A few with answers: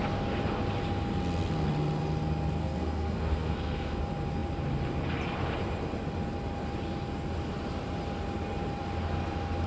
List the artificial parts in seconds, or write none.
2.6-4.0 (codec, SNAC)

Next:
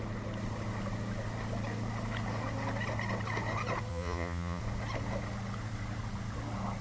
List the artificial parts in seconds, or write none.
3.9-4.6 (vocoder, Vocos)

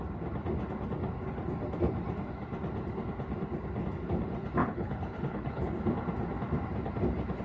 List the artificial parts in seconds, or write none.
4.6-5.8 (codec, HILCodec)

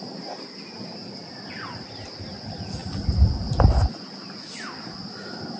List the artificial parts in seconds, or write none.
none

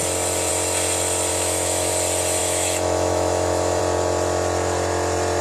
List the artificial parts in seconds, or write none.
1.3-1.9 (autoencoder, DAC-VAE); 2.4-3.8

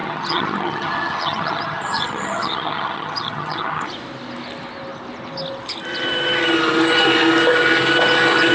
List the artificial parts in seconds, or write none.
0.0-3.9 (vocoder, HiFi-GAN)